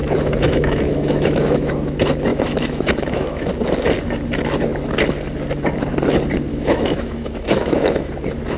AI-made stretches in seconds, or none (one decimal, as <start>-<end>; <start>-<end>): 0.0-1.7; 2.3-3.5; 6.5-8.1